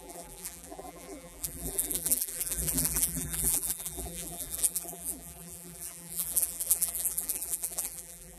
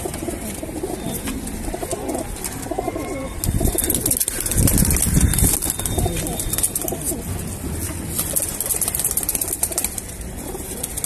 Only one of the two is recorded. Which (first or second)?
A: second